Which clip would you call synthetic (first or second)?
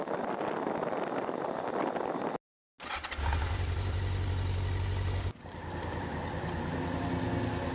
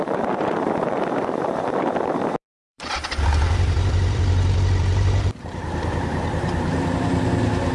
second